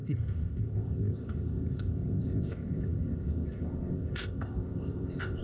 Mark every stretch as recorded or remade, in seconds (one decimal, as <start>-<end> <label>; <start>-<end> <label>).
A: 0.0-5.4 remade